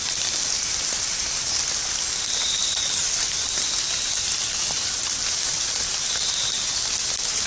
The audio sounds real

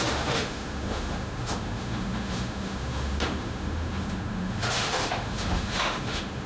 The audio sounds fake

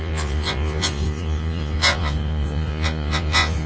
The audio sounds fake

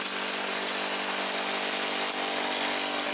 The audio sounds real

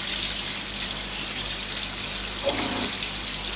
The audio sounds real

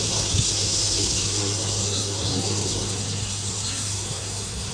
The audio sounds fake